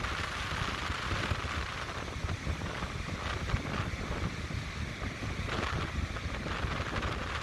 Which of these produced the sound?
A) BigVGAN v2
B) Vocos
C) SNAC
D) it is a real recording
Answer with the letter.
D